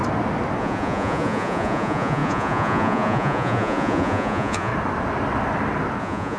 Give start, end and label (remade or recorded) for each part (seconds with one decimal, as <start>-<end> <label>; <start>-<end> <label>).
0.0-0.6 recorded; 0.6-4.7 remade; 4.7-6.0 recorded; 6.0-6.4 remade